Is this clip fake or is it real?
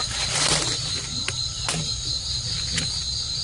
real